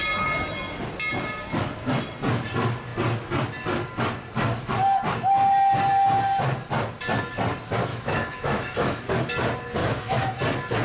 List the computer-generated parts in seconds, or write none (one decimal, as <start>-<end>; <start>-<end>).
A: 7.9-9.1; 9.8-10.4

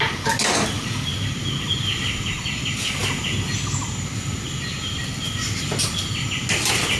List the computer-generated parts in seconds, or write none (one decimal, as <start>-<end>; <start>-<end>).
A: none

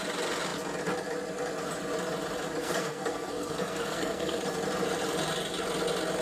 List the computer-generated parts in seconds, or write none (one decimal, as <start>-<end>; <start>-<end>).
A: 2.6-4.4

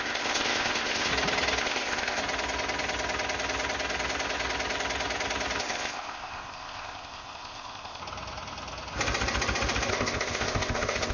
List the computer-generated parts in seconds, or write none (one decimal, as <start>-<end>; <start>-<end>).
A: 0.0-1.1; 1.6-2.2; 5.6-8.0; 9.9-11.1